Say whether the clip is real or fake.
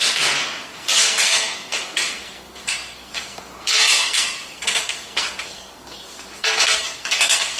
fake